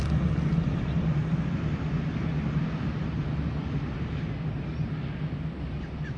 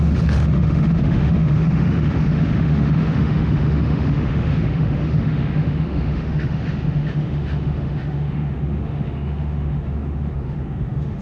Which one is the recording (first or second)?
first